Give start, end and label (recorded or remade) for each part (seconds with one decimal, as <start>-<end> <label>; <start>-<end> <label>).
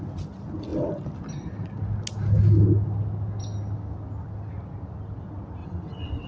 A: 0.0-5.6 recorded; 5.6-6.3 remade